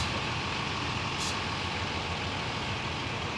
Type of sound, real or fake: real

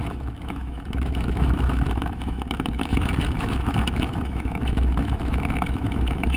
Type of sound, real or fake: fake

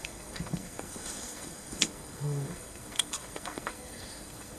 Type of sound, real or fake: fake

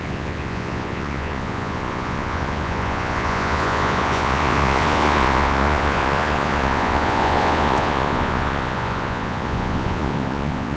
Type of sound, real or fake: fake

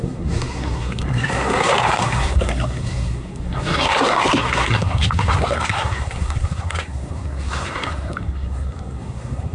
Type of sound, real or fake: fake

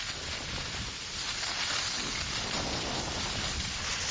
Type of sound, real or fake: real